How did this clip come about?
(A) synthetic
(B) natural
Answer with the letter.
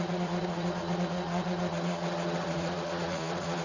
A